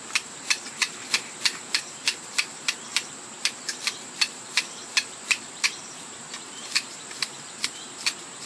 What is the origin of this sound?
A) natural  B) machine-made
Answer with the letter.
B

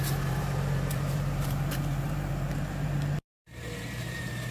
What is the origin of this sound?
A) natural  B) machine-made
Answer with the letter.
B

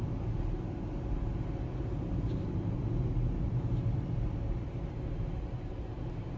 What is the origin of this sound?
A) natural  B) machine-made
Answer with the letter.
A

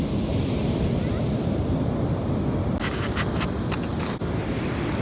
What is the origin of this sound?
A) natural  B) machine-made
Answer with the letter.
A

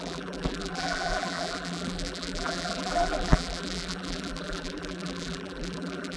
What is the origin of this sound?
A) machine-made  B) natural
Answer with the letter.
A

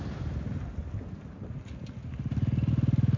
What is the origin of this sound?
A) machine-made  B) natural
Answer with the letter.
B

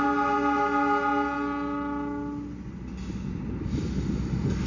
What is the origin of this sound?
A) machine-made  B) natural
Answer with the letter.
B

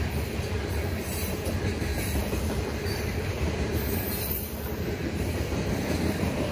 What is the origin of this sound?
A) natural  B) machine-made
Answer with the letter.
B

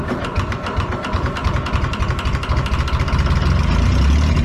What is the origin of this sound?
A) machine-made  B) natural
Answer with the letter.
B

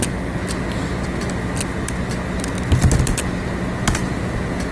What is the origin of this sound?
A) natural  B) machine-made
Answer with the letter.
A